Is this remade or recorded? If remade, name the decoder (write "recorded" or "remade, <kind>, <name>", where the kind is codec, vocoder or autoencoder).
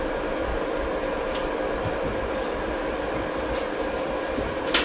recorded